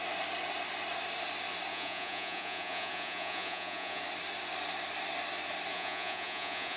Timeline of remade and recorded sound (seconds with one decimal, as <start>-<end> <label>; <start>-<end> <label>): 0.0-1.7 recorded; 1.7-4.0 remade; 4.0-5.7 recorded; 5.7-6.8 remade

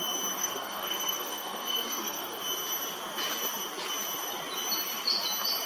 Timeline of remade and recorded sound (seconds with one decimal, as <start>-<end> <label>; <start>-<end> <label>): 0.0-0.4 recorded; 0.4-2.4 remade; 2.4-5.7 recorded